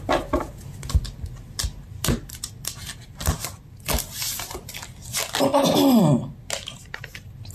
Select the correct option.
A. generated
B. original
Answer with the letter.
B